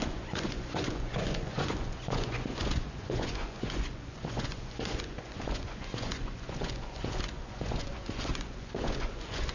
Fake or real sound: fake